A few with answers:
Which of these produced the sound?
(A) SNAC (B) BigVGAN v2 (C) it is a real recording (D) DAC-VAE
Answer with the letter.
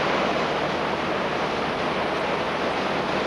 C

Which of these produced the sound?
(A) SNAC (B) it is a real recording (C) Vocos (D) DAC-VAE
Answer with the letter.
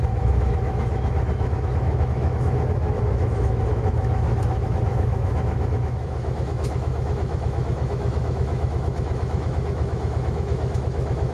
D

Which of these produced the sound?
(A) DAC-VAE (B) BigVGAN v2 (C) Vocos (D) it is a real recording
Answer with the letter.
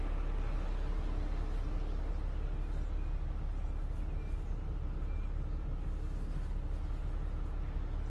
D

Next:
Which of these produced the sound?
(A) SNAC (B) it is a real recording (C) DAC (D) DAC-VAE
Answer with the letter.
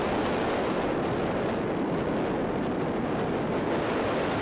B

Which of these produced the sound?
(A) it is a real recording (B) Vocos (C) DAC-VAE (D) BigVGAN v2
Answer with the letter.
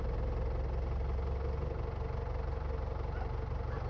A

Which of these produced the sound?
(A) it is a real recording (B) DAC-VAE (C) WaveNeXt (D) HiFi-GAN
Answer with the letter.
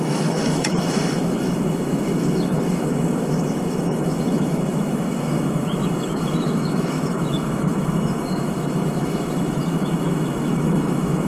B